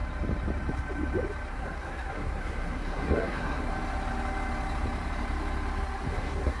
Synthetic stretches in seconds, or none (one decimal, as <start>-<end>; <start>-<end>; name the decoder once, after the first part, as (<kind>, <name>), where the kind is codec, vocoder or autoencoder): 1.5-3.7 (codec, SNAC); 6.1-6.6